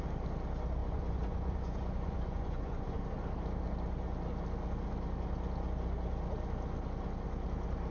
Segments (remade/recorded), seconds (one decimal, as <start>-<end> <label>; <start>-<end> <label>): 0.0-0.8 recorded; 0.8-3.0 remade; 3.0-7.9 recorded